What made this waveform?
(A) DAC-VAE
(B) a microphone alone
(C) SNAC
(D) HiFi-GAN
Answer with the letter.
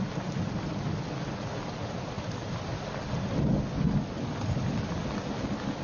B